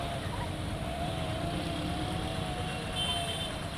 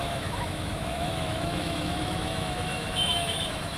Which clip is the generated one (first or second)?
second